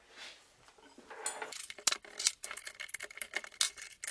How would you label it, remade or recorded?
recorded